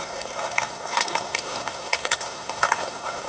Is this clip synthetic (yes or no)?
yes